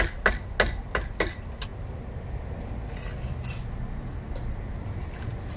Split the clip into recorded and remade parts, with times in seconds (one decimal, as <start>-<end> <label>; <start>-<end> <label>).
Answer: 0.0-5.6 recorded